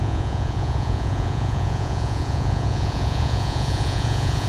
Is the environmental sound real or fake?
fake